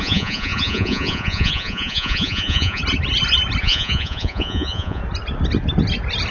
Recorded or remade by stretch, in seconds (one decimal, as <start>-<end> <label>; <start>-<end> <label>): 0.0-2.8 remade; 2.8-3.6 recorded; 3.6-5.0 remade; 5.0-6.3 recorded